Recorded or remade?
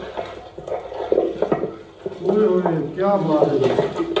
recorded